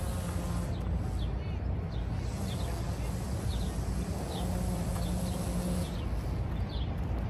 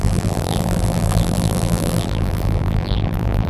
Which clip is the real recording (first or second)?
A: first